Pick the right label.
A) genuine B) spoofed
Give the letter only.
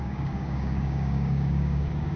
B